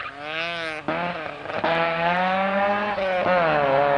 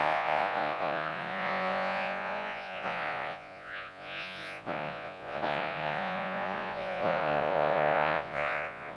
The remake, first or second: second